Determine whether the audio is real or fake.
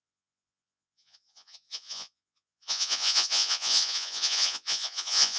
fake